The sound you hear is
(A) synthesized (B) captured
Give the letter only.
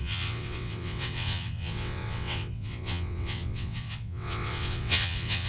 A